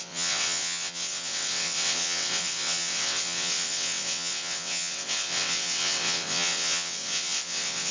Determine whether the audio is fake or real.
fake